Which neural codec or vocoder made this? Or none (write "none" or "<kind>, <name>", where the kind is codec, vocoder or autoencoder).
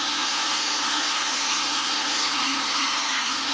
codec, SNAC